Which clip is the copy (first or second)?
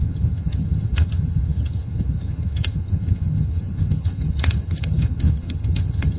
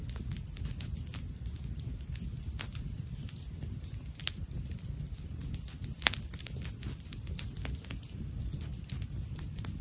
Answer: first